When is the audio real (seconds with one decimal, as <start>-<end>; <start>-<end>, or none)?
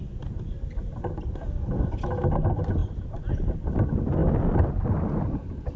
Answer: 0.0-5.8